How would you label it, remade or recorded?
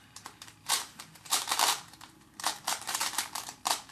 remade